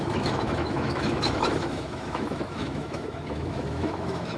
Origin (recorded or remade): remade